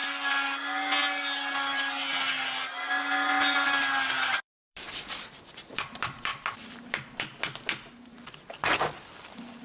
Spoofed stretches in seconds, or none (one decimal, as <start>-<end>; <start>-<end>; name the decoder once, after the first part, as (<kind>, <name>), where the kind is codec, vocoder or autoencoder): 4.3-6.3 (vocoder, BigVGAN v2); 9.2-9.6